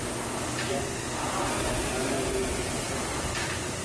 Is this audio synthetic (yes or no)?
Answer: no